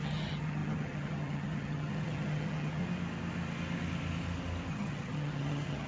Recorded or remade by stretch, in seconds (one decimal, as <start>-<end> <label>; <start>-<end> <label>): 0.0-2.8 remade; 2.8-4.7 recorded; 4.7-5.9 remade